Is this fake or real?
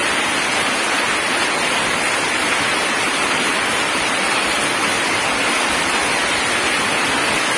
real